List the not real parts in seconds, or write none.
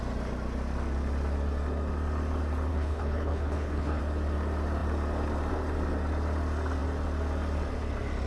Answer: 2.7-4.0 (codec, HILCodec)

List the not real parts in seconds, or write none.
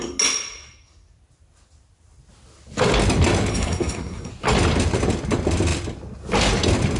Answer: 3.5-4.3 (codec, SNAC)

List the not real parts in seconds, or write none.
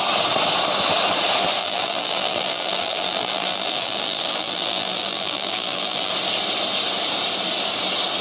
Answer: 1.6-6.1 (vocoder, BigVGAN v2)